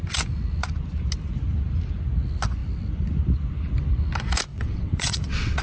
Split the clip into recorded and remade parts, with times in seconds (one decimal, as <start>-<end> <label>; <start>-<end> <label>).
0.0-4.5 recorded; 4.5-5.6 remade